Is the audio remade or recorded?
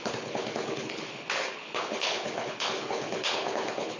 remade